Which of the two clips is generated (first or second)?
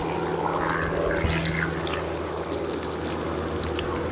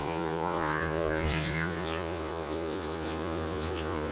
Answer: second